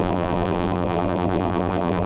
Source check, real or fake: fake